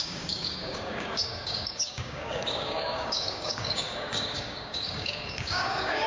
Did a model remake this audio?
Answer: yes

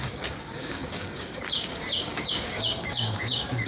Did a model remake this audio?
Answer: yes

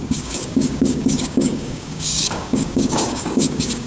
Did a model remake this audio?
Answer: yes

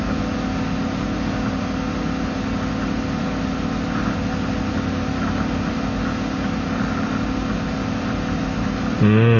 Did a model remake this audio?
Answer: no